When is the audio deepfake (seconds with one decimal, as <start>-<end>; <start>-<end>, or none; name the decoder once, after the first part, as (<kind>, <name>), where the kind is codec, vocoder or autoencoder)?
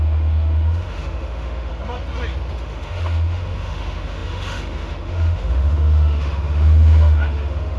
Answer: 0.0-1.7 (autoencoder, DAC-VAE); 2.5-7.8